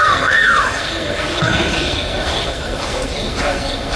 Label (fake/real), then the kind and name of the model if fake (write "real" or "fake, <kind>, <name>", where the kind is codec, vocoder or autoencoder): fake, codec, SNAC